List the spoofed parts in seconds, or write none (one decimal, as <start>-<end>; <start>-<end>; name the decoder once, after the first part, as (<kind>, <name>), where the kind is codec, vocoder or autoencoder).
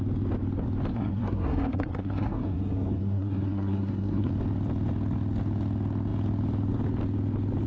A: 0.9-4.3 (codec, SNAC)